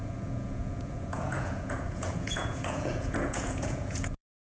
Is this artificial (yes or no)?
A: yes